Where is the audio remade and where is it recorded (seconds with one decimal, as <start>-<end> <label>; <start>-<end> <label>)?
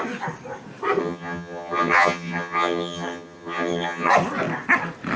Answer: 0.0-1.0 recorded; 1.0-4.1 remade; 4.1-5.2 recorded